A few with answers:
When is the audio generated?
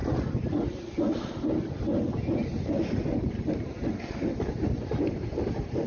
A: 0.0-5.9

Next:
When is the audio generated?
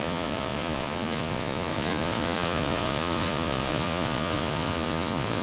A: 0.0-5.4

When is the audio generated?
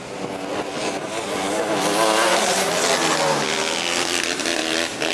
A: none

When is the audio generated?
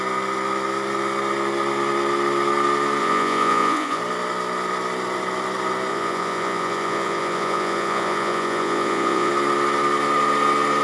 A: 3.0-4.0; 5.9-9.3